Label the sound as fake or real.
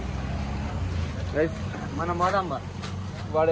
real